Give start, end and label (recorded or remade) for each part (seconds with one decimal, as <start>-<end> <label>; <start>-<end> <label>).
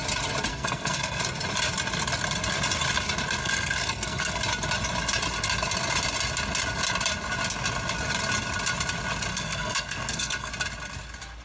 0.0-0.5 recorded; 0.5-1.2 remade; 1.2-3.4 recorded; 3.4-4.4 remade; 4.4-9.3 recorded; 9.3-10.5 remade; 10.5-11.4 recorded